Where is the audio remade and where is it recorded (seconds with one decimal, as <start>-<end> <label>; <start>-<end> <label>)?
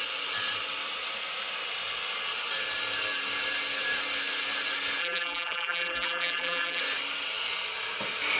0.0-5.0 recorded; 5.0-6.8 remade; 6.8-8.4 recorded